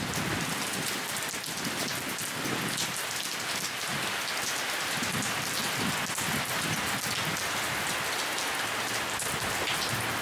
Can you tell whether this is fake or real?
real